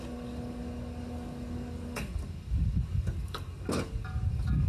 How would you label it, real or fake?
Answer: fake